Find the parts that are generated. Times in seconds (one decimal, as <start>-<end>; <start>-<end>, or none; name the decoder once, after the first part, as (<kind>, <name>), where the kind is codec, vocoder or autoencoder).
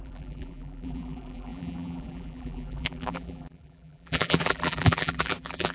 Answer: 0.0-5.7 (vocoder, BigVGAN v2)